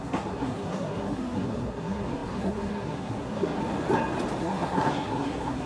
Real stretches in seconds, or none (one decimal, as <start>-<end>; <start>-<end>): 3.6-4.4

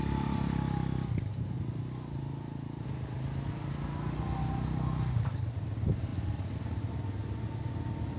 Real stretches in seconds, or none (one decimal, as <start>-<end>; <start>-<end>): 0.0-8.2

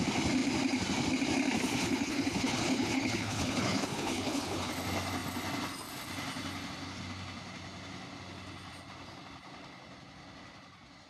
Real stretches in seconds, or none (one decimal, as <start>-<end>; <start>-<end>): 0.0-1.8; 4.7-11.1

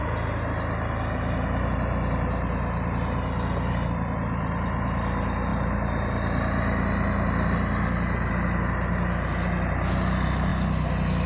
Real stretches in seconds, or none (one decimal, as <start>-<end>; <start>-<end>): 0.0-11.3

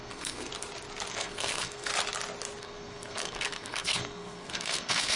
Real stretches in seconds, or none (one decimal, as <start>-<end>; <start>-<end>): 0.5-1.1; 1.9-2.6